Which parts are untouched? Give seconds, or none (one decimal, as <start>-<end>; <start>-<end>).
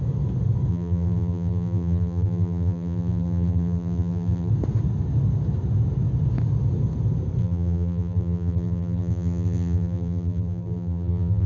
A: 0.0-0.7; 4.5-7.4